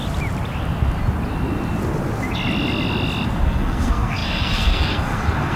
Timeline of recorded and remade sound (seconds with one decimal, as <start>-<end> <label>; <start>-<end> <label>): 0.0-3.4 recorded; 3.4-5.6 remade